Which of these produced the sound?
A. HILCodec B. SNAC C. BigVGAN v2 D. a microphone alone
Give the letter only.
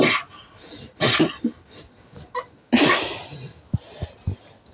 D